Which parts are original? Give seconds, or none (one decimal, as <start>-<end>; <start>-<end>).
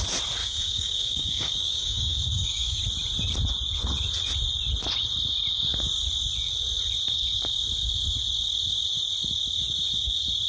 0.0-0.4; 2.8-10.5